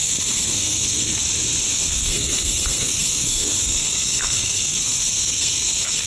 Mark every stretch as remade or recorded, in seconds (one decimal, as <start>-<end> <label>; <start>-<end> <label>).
0.0-1.2 remade; 1.2-1.7 recorded; 1.7-6.1 remade